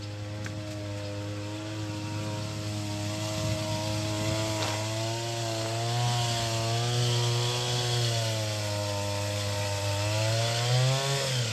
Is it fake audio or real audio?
real